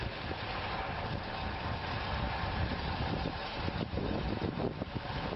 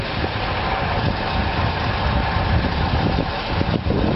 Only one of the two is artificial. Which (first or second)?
second